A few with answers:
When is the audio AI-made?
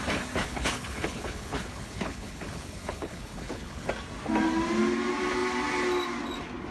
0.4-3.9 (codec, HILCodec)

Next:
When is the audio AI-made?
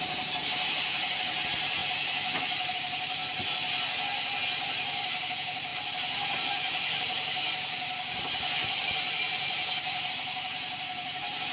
0.0-1.8 (vocoder, BigVGAN v2); 2.7-3.2; 5.3-11.5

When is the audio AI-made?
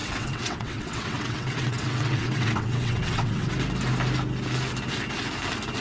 0.0-3.5 (vocoder, WaveNeXt)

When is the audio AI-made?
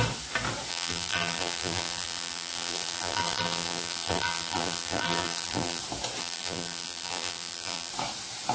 0.7-5.8 (vocoder, BigVGAN v2); 6.2-7.9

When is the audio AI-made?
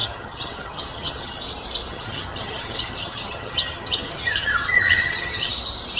0.0-1.4 (vocoder, HiFi-GAN); 1.9-5.5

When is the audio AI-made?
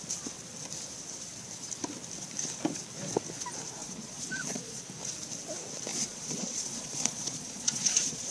3.8-4.8 (vocoder, Vocos); 5.9-8.3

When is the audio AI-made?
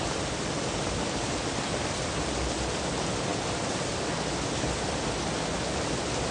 none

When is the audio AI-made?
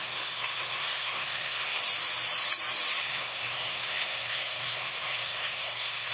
0.0-1.8 (codec, SNAC); 3.0-6.1